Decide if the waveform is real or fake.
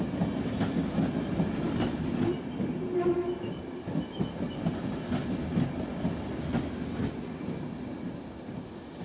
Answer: real